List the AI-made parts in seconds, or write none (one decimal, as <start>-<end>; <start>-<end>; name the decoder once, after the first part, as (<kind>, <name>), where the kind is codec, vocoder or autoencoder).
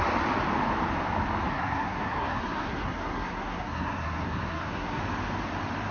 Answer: 1.5-5.0 (codec, SNAC)